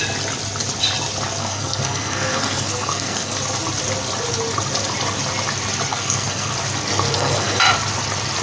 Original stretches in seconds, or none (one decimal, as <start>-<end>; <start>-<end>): 0.0-1.4; 3.4-5.9; 6.5-6.9; 7.6-8.4